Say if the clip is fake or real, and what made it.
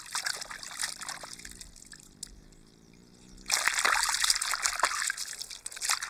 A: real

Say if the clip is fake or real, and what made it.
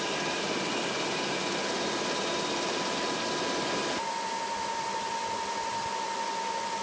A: fake, vocoder, BigVGAN v2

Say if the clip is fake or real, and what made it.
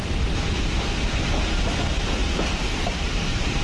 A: real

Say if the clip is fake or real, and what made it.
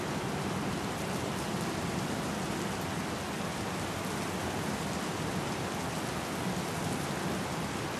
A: real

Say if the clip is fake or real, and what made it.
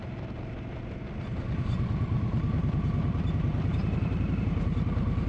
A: real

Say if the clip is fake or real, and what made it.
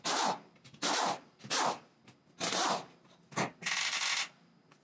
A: real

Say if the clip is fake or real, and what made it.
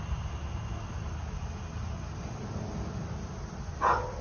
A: real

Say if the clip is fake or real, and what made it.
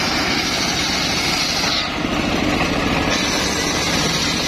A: real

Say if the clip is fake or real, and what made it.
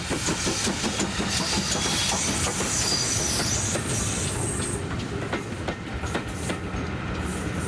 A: real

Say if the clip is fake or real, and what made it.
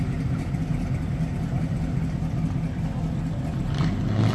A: real